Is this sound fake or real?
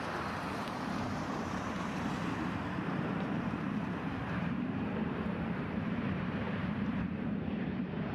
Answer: fake